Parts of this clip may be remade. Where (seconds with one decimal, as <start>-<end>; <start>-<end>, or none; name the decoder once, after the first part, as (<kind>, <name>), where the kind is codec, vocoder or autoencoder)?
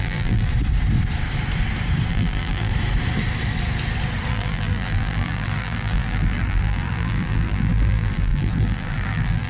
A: 0.0-0.5 (vocoder, BigVGAN v2); 2.1-2.7; 4.3-9.5